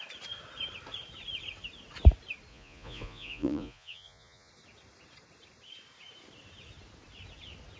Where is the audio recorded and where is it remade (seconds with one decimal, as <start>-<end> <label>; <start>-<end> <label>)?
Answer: 0.0-2.5 recorded; 2.5-4.5 remade; 4.5-7.8 recorded